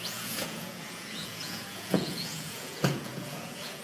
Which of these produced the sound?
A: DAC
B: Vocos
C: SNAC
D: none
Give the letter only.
B